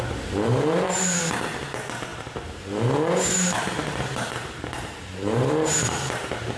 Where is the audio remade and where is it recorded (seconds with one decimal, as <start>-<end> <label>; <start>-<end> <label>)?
0.0-0.5 recorded; 0.5-1.2 remade; 1.2-2.1 recorded; 2.1-5.8 remade; 5.8-6.6 recorded